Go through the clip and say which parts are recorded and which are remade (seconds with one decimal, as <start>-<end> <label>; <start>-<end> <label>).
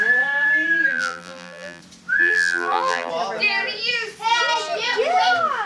0.0-0.9 recorded; 0.9-1.8 remade; 1.8-2.2 recorded; 2.2-3.1 remade; 3.1-5.7 recorded